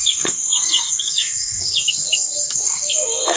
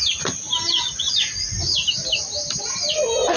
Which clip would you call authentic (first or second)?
second